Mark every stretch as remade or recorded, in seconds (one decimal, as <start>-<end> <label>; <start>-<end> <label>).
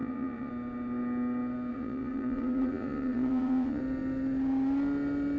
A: 0.0-0.5 remade; 0.5-1.7 recorded; 1.7-3.8 remade; 3.8-5.4 recorded